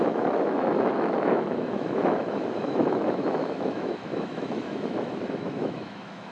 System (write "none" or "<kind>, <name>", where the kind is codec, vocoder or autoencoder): autoencoder, DAC-VAE